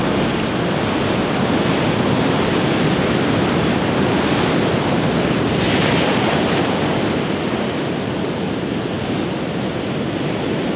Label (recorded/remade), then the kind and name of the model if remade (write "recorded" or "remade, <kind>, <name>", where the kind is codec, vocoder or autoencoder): recorded